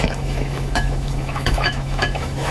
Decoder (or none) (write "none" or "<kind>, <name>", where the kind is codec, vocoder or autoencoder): autoencoder, DAC-VAE